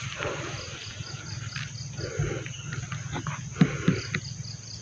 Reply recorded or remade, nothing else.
recorded